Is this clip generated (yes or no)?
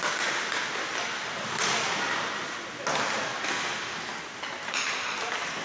no